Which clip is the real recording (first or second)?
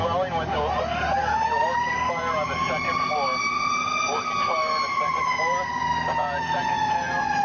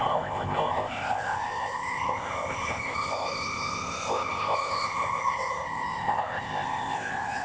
first